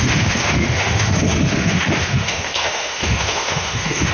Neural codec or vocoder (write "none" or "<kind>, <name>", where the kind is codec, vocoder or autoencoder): autoencoder, DAC-VAE